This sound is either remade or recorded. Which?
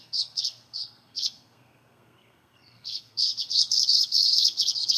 remade